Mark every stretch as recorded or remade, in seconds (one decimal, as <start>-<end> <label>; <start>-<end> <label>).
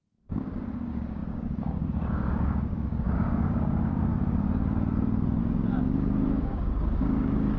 0.0-4.1 remade; 4.1-5.4 recorded; 5.4-7.6 remade